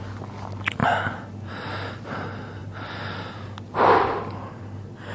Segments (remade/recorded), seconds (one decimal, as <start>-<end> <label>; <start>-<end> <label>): 0.0-5.1 recorded